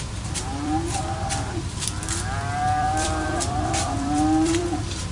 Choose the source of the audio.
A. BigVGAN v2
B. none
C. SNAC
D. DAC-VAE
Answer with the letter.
A